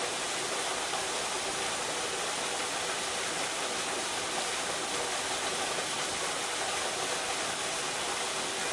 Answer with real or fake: real